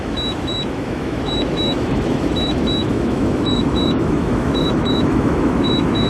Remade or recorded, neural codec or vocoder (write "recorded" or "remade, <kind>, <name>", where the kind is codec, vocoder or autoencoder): remade, autoencoder, DAC-VAE